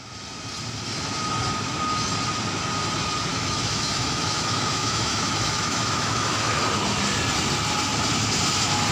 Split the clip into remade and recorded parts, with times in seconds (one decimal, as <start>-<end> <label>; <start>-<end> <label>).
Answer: 0.0-3.3 recorded; 3.3-6.6 remade; 6.6-8.9 recorded